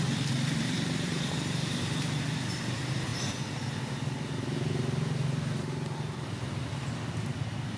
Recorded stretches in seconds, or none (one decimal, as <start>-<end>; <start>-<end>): 3.1-7.8